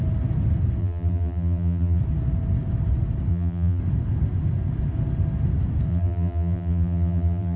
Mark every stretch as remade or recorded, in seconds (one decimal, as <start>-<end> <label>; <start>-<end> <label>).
0.0-0.8 recorded; 0.8-2.0 remade; 2.0-3.3 recorded; 3.3-3.8 remade; 3.8-5.9 recorded; 5.9-7.6 remade